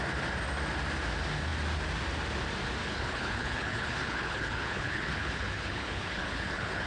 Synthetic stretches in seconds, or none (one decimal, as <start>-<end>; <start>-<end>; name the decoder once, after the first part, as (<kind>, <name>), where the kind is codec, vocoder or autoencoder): 2.8-6.9 (codec, HILCodec)